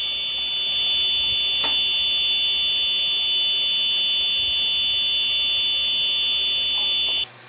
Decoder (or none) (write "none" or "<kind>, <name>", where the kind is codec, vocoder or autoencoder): none